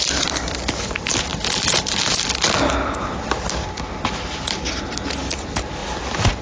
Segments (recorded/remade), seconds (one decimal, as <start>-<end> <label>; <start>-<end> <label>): 0.0-6.4 recorded